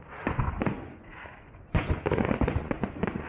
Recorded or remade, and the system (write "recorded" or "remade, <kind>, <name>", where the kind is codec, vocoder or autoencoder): remade, vocoder, Vocos